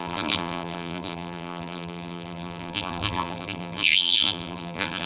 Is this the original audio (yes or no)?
no